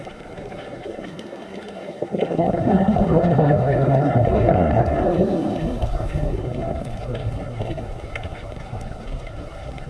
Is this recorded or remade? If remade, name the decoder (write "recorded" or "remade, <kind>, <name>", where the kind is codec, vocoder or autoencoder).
remade, codec, SNAC